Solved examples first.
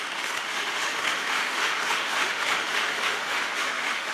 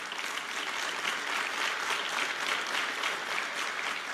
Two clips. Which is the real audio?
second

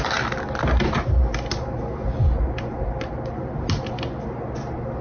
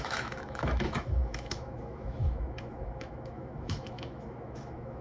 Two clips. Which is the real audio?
first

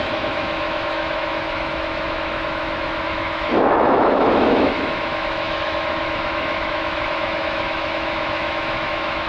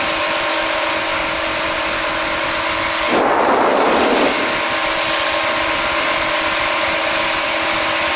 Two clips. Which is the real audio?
second